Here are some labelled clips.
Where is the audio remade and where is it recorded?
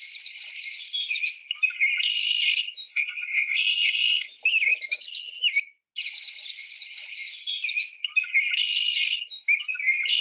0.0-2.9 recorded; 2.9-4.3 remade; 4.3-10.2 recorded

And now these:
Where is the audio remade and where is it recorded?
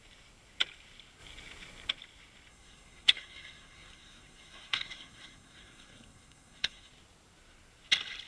0.0-2.5 recorded; 2.5-6.9 remade; 6.9-8.3 recorded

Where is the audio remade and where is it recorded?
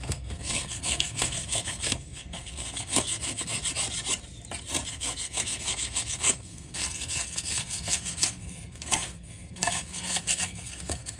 0.0-3.6 remade; 3.6-4.9 recorded; 4.9-11.2 remade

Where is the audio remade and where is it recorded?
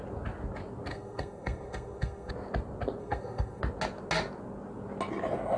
0.0-0.9 recorded; 0.9-2.3 remade; 2.3-3.0 recorded; 3.0-3.6 remade; 3.6-5.6 recorded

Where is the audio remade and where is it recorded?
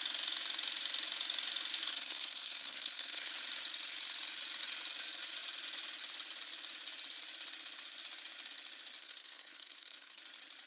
0.0-1.9 recorded; 1.9-3.3 remade; 3.3-9.0 recorded; 9.0-10.2 remade; 10.2-10.7 recorded